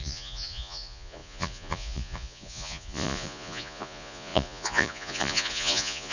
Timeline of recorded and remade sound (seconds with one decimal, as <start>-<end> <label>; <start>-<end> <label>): 0.0-6.1 remade